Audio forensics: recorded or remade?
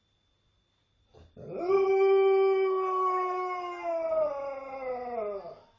recorded